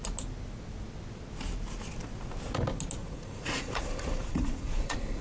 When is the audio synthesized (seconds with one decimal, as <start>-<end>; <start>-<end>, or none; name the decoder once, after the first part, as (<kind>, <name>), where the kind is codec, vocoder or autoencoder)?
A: 3.0-5.2 (vocoder, Vocos)